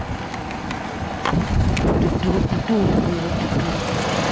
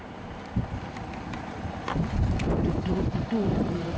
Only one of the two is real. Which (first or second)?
first